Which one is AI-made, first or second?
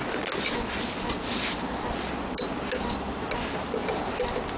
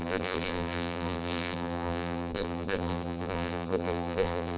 second